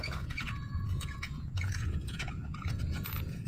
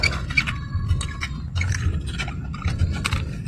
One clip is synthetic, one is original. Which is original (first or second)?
second